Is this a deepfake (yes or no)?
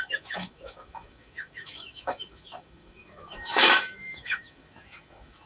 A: yes